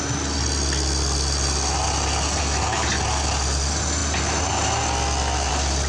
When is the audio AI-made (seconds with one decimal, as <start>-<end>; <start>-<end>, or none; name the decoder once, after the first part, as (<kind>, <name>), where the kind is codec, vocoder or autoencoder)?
none